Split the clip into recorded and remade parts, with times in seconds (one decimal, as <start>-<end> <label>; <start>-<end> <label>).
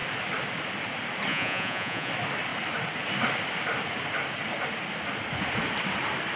0.0-1.3 recorded; 1.3-2.1 remade; 2.1-6.4 recorded